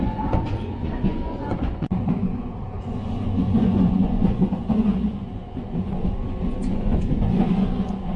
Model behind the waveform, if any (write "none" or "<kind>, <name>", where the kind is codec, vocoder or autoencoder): vocoder, Vocos